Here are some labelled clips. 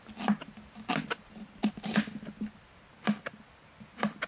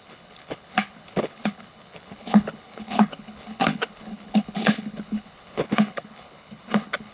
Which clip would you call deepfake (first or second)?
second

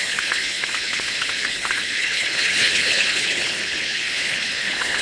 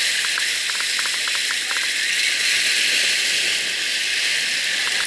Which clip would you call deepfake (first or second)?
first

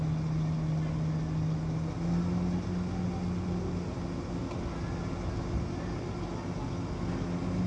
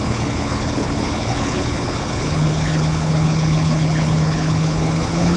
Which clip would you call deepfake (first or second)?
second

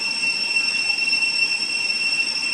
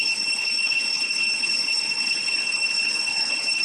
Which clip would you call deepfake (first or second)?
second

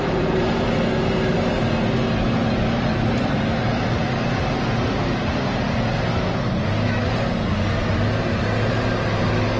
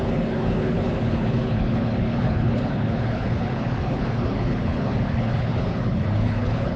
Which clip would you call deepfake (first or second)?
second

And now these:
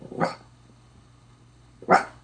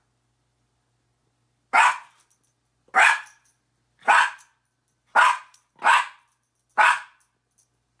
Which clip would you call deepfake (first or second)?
first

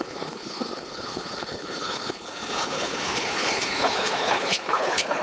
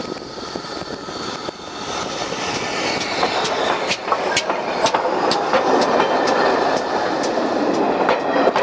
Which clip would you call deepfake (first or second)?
first